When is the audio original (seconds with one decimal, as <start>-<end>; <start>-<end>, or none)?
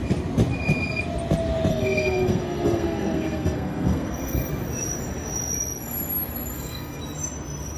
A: 0.0-1.7; 4.5-6.5; 7.0-7.8